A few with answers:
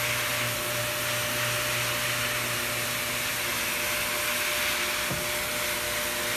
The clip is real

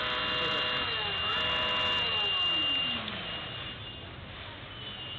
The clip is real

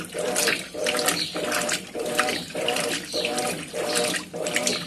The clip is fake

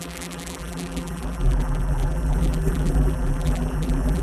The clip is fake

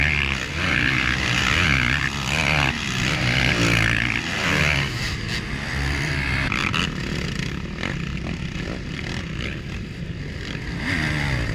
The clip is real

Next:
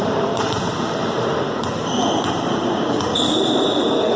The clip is fake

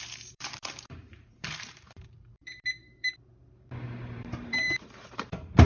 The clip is fake